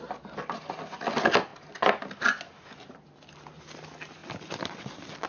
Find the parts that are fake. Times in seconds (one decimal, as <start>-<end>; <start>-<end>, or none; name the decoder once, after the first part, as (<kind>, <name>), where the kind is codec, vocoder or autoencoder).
none